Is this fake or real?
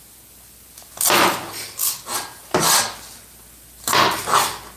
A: real